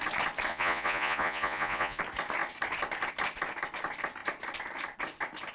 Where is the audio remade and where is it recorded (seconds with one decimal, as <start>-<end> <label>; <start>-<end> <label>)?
0.0-0.5 recorded; 0.5-2.0 remade; 2.0-5.5 recorded